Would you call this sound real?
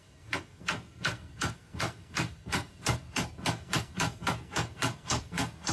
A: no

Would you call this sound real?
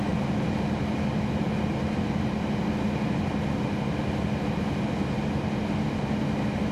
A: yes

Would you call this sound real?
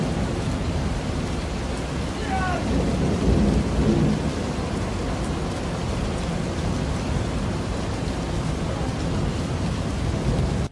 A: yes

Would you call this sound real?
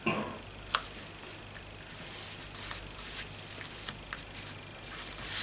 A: yes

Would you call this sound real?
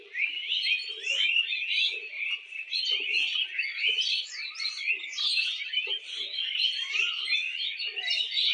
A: yes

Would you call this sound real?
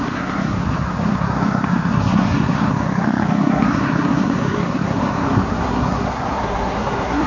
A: no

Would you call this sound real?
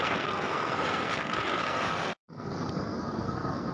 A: no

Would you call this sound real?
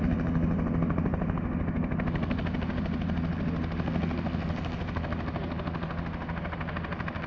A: yes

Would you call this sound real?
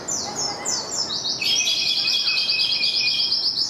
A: yes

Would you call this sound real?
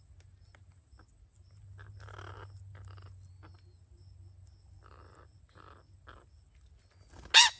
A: yes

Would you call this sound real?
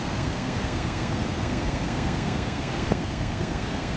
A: no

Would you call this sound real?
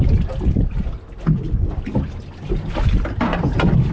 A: yes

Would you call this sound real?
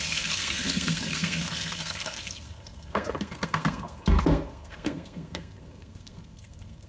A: no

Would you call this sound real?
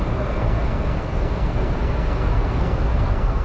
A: no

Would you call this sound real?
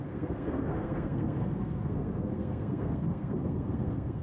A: no